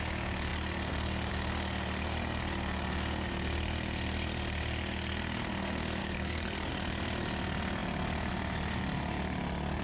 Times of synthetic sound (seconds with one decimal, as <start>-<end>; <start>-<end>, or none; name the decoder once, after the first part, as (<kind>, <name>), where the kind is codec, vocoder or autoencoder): 6.0-6.7 (codec, DAC)

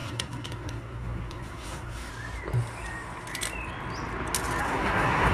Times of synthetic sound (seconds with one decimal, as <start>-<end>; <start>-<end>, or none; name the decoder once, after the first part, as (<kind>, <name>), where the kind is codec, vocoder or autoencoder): 0.0-2.1 (codec, SNAC); 4.6-5.3

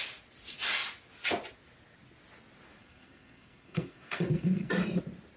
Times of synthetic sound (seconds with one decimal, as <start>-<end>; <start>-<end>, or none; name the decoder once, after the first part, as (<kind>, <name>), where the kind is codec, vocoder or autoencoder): 2.8-4.7 (codec, SNAC)

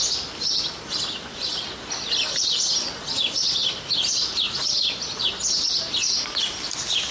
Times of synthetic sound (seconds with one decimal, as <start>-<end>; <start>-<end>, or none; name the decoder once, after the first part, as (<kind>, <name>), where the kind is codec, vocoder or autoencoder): none

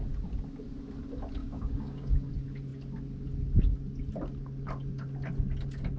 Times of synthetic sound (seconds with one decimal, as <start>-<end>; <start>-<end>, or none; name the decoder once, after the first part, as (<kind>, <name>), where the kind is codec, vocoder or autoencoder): 1.4-2.3 (codec, DAC)

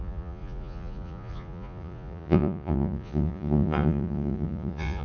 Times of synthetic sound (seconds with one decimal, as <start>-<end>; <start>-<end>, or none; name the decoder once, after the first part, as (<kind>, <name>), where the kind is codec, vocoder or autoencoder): 0.0-5.0 (vocoder, Vocos)

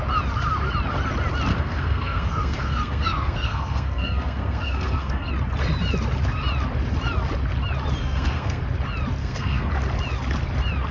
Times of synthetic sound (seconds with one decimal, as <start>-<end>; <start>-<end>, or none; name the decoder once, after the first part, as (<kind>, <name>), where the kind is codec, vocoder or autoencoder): 1.5-5.3 (codec, SNAC); 8.0-8.6; 9.2-9.7

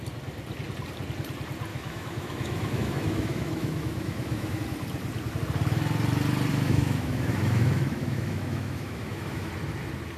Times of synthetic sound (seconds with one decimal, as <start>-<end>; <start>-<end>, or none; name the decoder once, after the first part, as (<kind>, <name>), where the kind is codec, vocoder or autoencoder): 1.7-4.6 (autoencoder, DAC-VAE); 6.5-9.5